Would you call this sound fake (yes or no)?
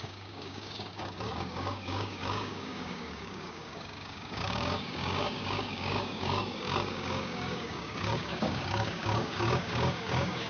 yes